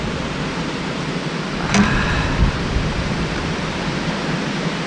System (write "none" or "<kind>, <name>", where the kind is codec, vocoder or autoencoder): vocoder, BigVGAN v2